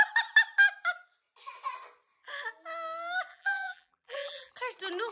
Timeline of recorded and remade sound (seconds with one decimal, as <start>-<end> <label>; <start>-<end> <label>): 0.0-3.3 recorded; 3.3-4.5 remade; 4.5-5.1 recorded